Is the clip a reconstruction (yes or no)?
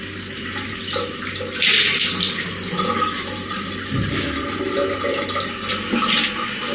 no